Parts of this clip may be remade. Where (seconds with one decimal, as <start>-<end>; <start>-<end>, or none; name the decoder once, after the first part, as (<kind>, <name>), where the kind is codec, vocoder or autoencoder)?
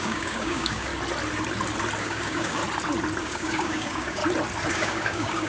0.0-0.9 (codec, DAC); 2.0-2.6; 3.2-4.2; 4.7-5.5